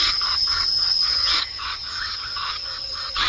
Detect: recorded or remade remade